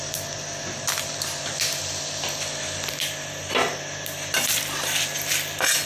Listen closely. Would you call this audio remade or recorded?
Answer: recorded